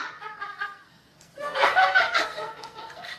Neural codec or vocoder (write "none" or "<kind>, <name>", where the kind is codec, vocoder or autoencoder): codec, SNAC